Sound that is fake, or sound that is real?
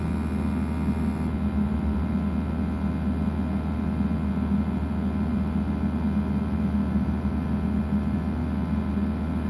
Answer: real